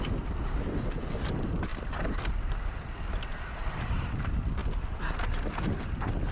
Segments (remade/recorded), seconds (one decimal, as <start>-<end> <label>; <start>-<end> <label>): 0.0-6.3 recorded